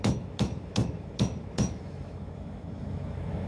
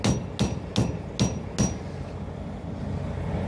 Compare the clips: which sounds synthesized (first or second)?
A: first